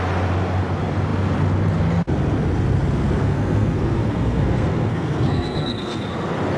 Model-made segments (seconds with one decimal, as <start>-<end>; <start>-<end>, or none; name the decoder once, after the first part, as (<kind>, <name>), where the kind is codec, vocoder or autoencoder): 3.2-6.1 (codec, SNAC)

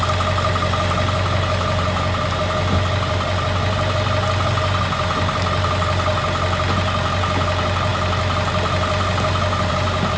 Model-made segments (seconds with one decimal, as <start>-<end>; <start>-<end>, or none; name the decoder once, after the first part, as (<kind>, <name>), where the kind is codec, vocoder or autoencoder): none

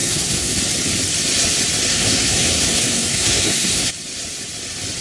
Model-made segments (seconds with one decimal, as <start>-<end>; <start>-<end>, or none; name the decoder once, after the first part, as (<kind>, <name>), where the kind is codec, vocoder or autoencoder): 0.0-0.6 (codec, SNAC); 1.9-3.9

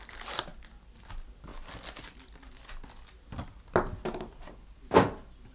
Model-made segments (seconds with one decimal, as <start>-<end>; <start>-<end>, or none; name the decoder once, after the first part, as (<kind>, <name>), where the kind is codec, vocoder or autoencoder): none

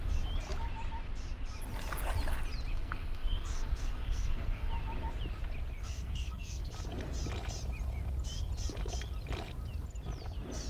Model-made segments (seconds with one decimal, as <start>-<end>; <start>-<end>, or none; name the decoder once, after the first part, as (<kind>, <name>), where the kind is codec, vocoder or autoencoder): 2.7-4.7 (codec, SNAC); 5.8-6.7

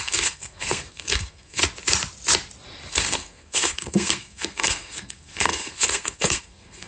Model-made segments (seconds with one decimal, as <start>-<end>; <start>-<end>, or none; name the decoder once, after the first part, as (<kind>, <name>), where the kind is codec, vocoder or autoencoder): 0.0-1.6 (codec, SNAC); 2.9-6.9